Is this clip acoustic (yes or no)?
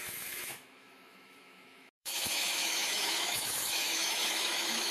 no